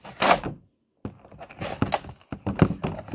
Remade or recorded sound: recorded